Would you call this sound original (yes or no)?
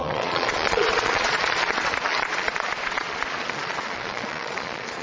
no